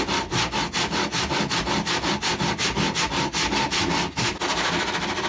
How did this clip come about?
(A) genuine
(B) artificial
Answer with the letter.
A